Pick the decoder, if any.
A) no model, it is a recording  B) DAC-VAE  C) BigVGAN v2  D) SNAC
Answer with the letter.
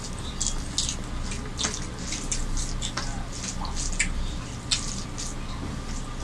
A